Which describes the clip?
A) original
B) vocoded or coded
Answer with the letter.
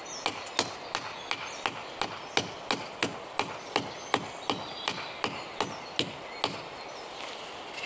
A